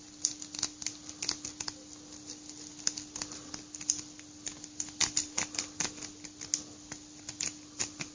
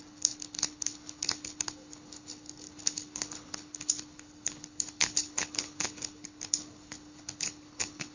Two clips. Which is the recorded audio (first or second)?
first